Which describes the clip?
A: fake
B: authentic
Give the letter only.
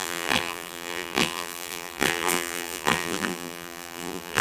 A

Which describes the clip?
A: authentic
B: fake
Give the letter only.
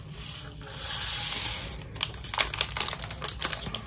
A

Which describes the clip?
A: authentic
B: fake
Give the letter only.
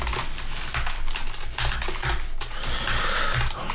A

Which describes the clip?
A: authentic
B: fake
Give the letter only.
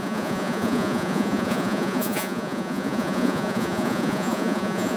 B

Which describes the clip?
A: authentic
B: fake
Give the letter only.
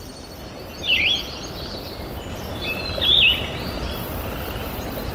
A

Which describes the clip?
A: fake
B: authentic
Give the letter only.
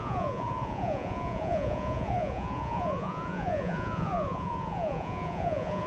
A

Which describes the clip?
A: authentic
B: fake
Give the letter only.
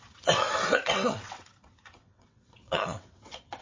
B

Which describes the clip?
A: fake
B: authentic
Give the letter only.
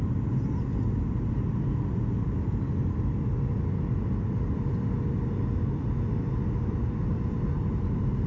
B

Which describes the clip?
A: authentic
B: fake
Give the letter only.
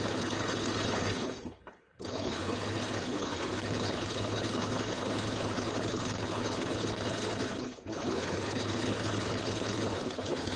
B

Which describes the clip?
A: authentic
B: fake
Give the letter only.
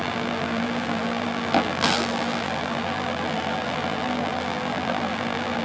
B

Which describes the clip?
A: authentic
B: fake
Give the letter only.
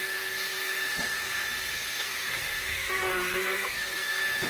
B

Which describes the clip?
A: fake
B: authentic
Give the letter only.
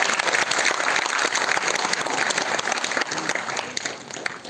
B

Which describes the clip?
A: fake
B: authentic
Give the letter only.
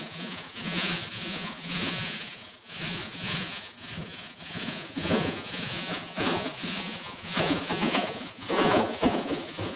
A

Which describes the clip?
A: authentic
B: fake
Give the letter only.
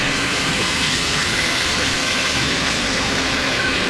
B